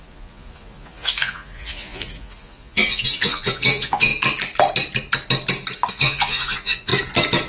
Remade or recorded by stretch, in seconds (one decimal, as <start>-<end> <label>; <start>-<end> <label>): 0.0-4.1 remade; 4.1-5.9 recorded; 5.9-6.9 remade; 6.9-7.5 recorded